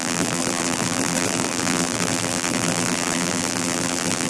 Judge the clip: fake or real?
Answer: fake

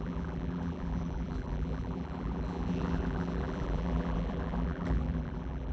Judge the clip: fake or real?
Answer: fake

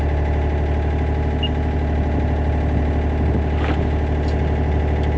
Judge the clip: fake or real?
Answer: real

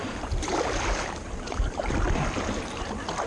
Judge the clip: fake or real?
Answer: real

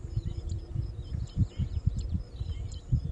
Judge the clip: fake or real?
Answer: fake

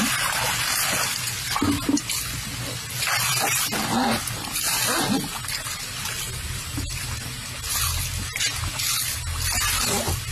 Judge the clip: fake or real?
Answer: real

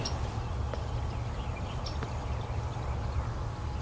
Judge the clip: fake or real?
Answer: real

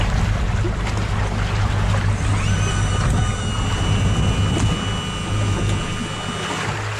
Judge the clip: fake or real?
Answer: real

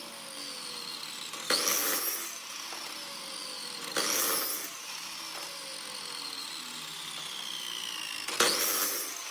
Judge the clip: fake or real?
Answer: real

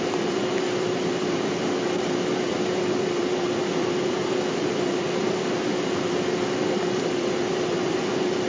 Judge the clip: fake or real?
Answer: fake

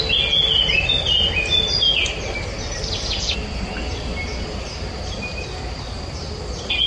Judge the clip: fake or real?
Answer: real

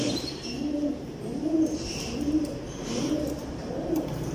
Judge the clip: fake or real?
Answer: fake